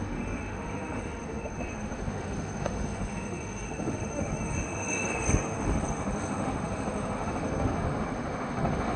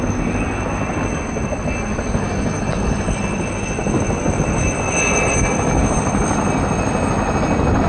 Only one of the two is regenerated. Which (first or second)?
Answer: first